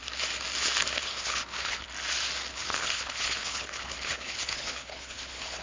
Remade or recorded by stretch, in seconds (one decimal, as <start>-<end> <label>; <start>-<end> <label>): 0.0-1.0 recorded; 1.0-1.9 remade; 1.9-2.5 recorded; 2.5-5.6 remade